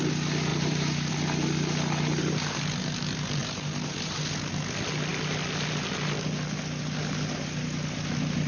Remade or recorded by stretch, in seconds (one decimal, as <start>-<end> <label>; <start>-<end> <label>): 0.0-0.5 recorded; 0.5-1.1 remade; 1.1-3.4 recorded; 3.4-4.2 remade; 4.2-8.5 recorded